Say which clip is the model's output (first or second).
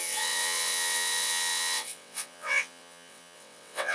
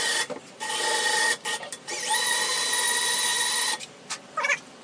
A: first